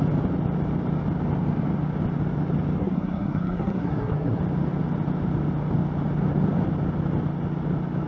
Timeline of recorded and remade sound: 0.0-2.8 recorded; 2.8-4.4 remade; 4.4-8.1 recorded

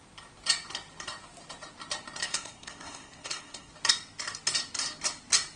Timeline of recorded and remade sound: 0.0-2.2 recorded; 2.2-3.7 remade; 3.7-5.6 recorded

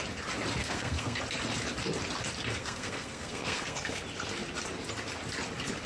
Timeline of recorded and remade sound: 0.0-0.6 recorded; 0.6-1.2 remade; 1.2-2.6 recorded; 2.6-4.0 remade; 4.0-5.9 recorded

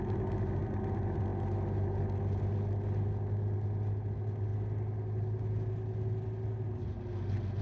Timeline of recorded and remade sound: 0.0-7.6 recorded

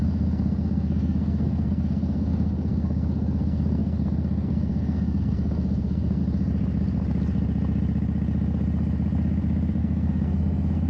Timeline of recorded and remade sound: 0.0-6.2 remade; 6.2-9.8 recorded; 9.8-10.9 remade

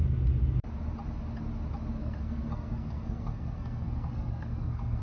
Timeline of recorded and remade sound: 0.0-2.0 recorded; 2.0-5.0 remade

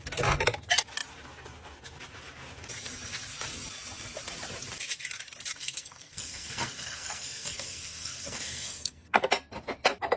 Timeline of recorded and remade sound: 0.0-5.6 recorded; 5.6-9.3 remade; 9.3-10.2 recorded